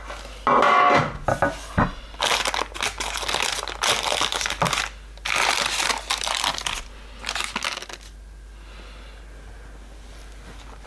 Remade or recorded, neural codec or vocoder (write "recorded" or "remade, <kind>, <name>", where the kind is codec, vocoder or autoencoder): recorded